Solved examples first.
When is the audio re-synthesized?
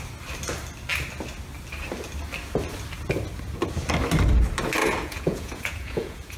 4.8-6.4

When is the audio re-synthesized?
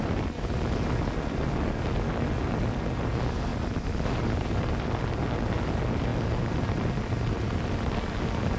none